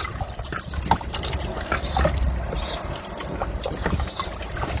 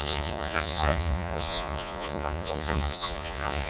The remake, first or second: second